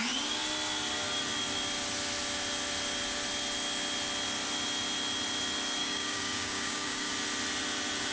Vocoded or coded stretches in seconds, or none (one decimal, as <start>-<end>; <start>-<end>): 5.8-7.1